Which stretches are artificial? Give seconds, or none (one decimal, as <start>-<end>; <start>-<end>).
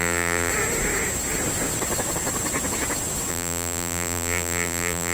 0.0-0.5; 3.3-5.1